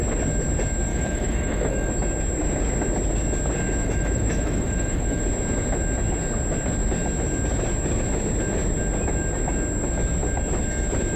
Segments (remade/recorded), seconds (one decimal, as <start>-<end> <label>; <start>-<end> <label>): 0.0-0.9 recorded; 0.9-1.9 remade; 1.9-3.8 recorded; 3.8-5.2 remade; 5.2-11.2 recorded